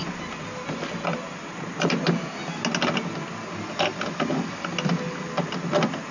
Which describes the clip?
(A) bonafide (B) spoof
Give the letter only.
A